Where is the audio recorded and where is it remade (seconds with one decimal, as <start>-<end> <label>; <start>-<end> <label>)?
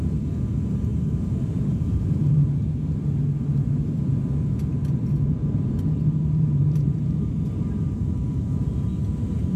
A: 0.0-0.9 recorded; 0.9-2.6 remade; 2.6-4.8 recorded; 4.8-7.3 remade; 7.3-9.6 recorded